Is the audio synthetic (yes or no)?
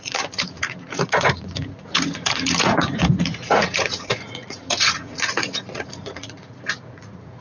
yes